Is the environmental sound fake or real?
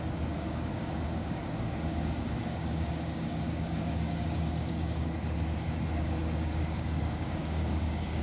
fake